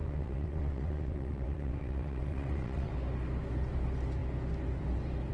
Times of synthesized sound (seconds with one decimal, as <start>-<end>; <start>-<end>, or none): 0.0-2.9